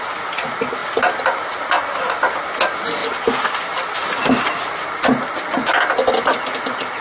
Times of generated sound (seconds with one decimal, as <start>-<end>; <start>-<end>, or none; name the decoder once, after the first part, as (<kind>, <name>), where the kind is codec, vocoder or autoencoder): none